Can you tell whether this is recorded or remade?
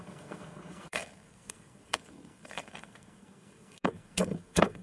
remade